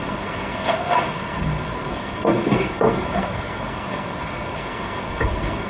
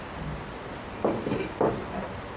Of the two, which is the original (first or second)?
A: second